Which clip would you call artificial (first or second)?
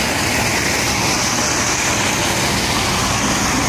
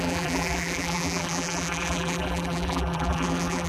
second